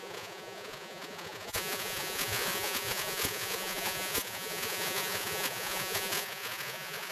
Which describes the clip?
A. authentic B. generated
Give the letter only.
B